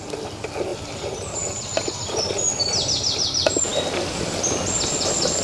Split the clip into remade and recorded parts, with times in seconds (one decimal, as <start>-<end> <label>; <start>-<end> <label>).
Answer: 0.0-5.4 recorded